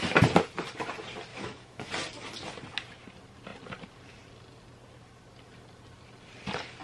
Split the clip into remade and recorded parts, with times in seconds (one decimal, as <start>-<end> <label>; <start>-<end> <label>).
0.0-1.3 recorded; 1.3-1.9 remade; 1.9-6.8 recorded